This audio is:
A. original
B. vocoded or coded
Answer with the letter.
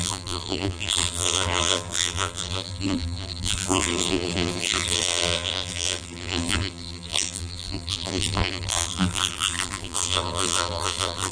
B